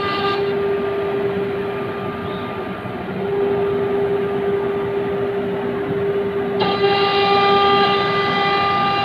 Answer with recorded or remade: recorded